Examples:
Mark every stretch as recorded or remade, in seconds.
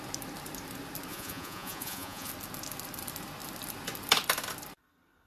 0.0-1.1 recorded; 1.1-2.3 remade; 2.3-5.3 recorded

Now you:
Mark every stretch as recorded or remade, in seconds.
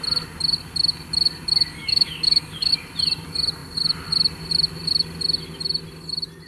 0.0-1.7 recorded; 1.7-2.7 remade; 2.7-6.5 recorded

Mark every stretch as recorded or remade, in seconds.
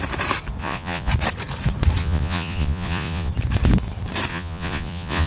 0.0-0.6 recorded; 0.6-1.1 remade; 1.1-2.0 recorded; 2.0-3.3 remade; 3.3-4.3 recorded; 4.3-5.3 remade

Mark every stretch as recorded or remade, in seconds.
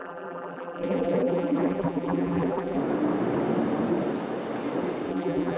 0.0-2.8 remade; 2.8-5.1 recorded; 5.1-5.6 remade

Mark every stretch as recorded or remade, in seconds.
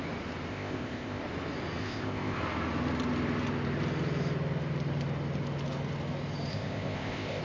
0.0-0.5 recorded; 0.5-1.2 remade; 1.2-1.8 recorded; 1.8-2.4 remade; 2.4-6.5 recorded; 6.5-7.4 remade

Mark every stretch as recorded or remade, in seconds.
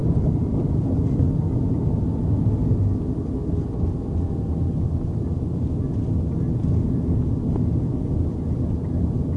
0.0-1.0 remade; 1.0-9.4 recorded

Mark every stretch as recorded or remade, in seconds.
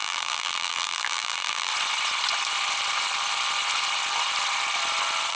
0.0-1.7 remade; 1.7-5.3 recorded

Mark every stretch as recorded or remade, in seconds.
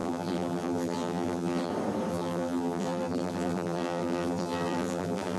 0.0-1.7 remade; 1.7-2.1 recorded; 2.1-5.4 remade